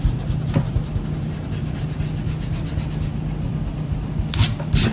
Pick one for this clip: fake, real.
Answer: real